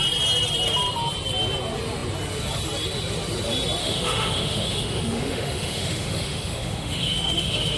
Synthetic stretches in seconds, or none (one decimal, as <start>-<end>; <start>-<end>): 3.8-7.8